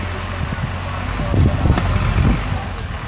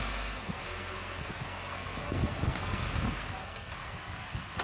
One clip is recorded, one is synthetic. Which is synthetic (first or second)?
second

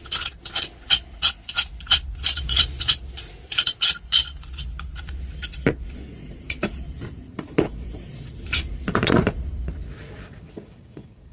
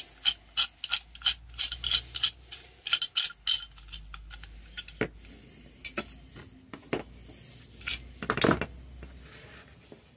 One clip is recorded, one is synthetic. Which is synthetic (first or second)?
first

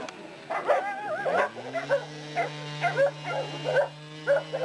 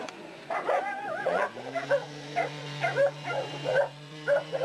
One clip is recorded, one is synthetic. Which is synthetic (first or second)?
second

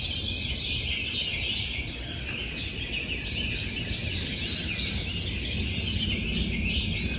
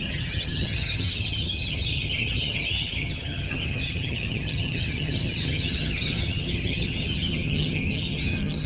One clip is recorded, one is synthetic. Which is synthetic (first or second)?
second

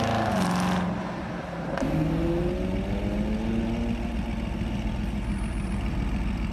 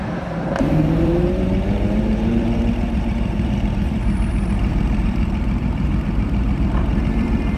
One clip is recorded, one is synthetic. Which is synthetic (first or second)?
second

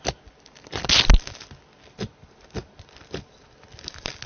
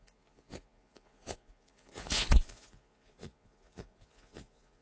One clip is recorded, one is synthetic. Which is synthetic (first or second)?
second